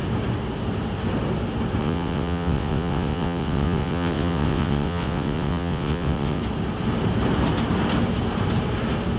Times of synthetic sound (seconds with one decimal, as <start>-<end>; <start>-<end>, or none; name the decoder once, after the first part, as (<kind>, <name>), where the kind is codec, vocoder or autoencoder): 1.8-6.4 (vocoder, WaveNeXt)